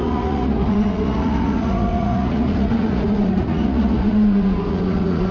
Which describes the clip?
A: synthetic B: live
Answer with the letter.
A